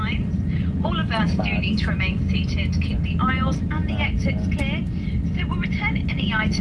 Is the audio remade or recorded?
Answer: recorded